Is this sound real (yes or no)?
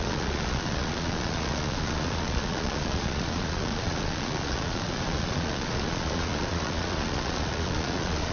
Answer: no